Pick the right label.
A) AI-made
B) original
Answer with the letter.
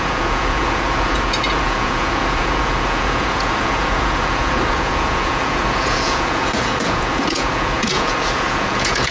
A